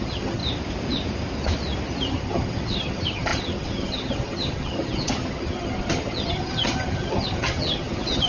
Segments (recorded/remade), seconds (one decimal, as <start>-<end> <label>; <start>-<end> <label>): 0.0-0.4 remade; 0.4-2.1 recorded; 2.1-8.3 remade